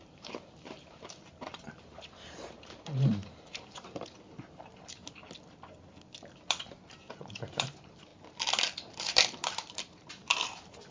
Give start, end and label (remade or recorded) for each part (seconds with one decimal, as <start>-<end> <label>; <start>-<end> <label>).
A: 0.0-5.0 remade; 5.0-6.6 recorded; 6.6-8.1 remade; 8.1-9.0 recorded; 9.0-10.9 remade